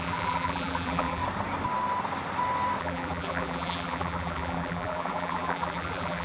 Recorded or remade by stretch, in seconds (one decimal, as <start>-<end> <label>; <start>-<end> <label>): 0.0-1.2 remade; 1.2-2.8 recorded; 2.8-6.2 remade